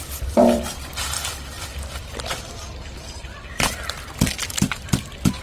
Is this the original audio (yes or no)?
no